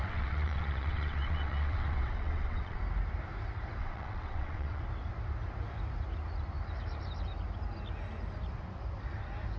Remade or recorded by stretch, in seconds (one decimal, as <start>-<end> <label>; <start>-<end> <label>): 0.0-2.8 remade; 2.8-3.8 recorded; 3.8-4.8 remade; 4.8-9.6 recorded